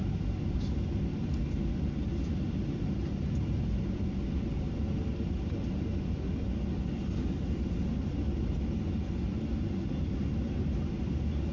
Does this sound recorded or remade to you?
recorded